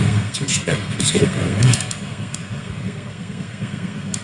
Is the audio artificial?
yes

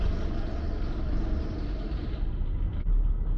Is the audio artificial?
no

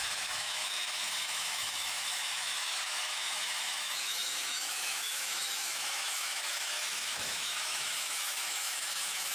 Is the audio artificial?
yes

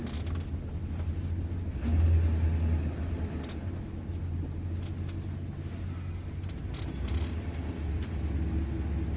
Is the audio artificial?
no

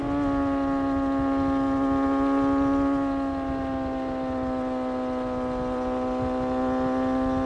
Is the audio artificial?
no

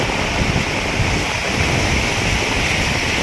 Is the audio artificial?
no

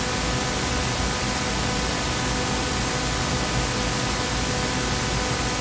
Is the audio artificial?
no